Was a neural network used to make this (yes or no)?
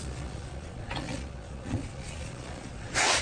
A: yes